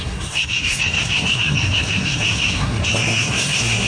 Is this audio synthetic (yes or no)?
yes